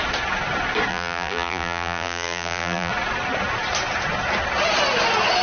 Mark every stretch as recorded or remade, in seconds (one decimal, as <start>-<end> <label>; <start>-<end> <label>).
0.0-0.9 recorded; 0.9-2.9 remade; 2.9-5.4 recorded